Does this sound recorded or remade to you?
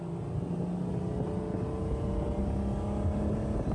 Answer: recorded